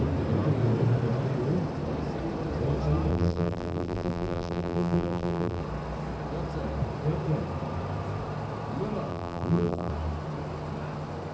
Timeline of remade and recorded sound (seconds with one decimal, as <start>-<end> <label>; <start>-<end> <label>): 0.0-3.1 recorded; 3.1-5.6 remade; 5.6-9.1 recorded; 9.1-9.9 remade; 9.9-11.3 recorded